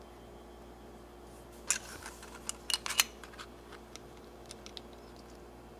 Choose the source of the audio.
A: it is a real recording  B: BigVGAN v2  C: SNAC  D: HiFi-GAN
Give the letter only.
A